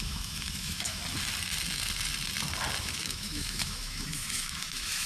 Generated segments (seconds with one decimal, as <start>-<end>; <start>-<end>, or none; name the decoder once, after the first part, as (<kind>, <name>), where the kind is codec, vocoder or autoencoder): 0.0-1.0 (autoencoder, DAC-VAE); 2.8-5.1

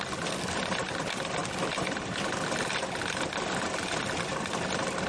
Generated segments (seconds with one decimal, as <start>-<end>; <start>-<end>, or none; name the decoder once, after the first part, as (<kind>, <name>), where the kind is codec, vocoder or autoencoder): none